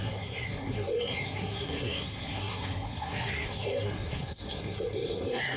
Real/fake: fake